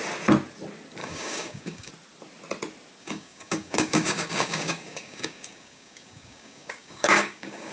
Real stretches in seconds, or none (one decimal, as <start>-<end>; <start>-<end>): 0.0-1.0; 1.9-3.0